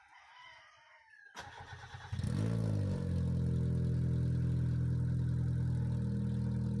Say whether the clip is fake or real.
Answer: real